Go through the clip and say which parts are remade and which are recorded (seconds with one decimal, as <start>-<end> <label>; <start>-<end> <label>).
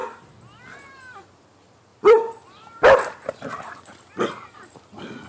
0.0-0.6 remade; 0.6-1.9 recorded; 1.9-5.3 remade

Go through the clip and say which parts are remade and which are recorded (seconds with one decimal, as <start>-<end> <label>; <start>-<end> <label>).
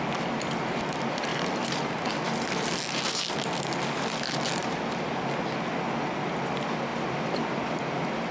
0.0-1.3 recorded; 1.3-1.9 remade; 1.9-4.6 recorded; 4.6-5.2 remade; 5.2-6.9 recorded; 6.9-7.8 remade; 7.8-8.3 recorded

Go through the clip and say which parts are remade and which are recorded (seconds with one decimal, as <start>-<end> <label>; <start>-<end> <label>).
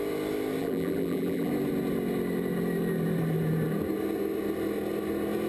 0.0-0.6 recorded; 0.6-1.5 remade; 1.5-5.5 recorded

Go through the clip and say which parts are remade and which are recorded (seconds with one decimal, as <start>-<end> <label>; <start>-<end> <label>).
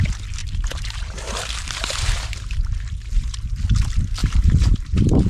0.0-0.4 recorded; 0.4-3.6 remade; 3.6-4.2 recorded; 4.2-5.3 remade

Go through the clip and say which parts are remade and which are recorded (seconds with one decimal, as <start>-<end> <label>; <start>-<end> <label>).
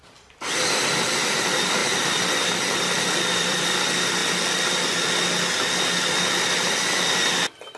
0.0-1.8 remade; 1.8-3.2 recorded; 3.2-4.2 remade; 4.2-7.8 recorded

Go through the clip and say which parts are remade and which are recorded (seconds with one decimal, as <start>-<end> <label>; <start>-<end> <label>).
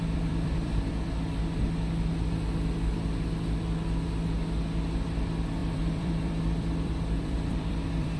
0.0-0.9 remade; 0.9-5.6 recorded; 5.6-8.2 remade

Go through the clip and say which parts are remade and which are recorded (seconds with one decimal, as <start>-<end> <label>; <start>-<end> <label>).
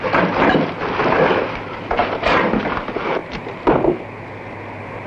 0.0-2.0 recorded; 2.0-2.6 remade; 2.6-3.2 recorded; 3.2-4.0 remade; 4.0-5.1 recorded